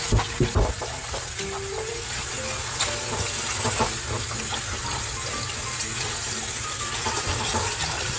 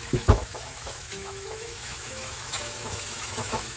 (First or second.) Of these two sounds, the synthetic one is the second